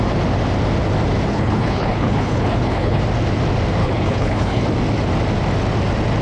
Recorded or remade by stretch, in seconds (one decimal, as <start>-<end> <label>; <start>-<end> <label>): 0.0-1.3 recorded; 1.3-3.0 remade; 3.0-3.8 recorded; 3.8-4.6 remade; 4.6-6.2 recorded